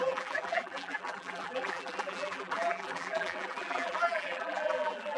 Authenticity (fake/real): fake